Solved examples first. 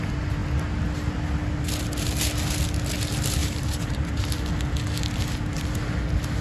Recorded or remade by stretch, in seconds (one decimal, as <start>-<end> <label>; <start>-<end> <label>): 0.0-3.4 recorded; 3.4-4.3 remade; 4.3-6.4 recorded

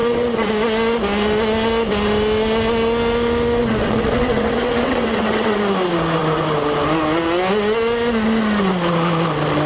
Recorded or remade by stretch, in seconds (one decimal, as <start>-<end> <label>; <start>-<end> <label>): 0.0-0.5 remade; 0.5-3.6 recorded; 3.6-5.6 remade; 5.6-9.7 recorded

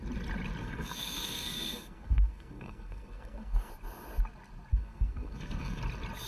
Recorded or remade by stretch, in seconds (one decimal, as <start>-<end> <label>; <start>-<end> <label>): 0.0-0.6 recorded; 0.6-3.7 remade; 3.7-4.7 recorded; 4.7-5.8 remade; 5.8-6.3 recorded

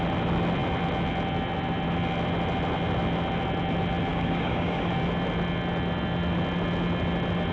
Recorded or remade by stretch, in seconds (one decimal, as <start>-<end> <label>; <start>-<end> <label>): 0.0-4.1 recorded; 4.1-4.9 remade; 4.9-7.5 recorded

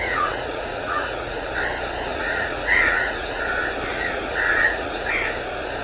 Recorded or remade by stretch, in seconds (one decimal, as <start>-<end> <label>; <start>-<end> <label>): 0.0-1.5 remade; 1.5-2.1 recorded; 2.1-3.4 remade; 3.4-3.9 recorded; 3.9-5.1 remade; 5.1-5.8 recorded

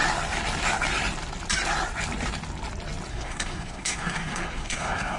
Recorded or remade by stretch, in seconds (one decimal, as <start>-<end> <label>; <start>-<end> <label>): 0.0-3.1 recorded; 3.1-5.2 remade